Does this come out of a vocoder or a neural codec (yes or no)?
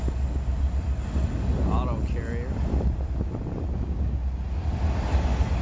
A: no